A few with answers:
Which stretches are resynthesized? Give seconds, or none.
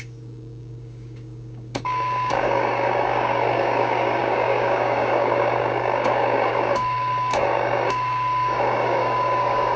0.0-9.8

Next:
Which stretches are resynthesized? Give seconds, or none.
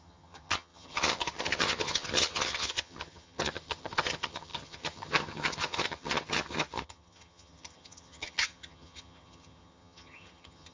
0.0-10.7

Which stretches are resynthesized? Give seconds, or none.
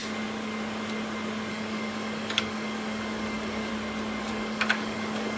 1.5-3.7; 4.2-5.4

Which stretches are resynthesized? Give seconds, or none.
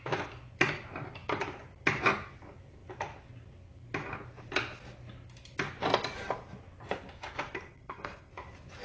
7.7-8.3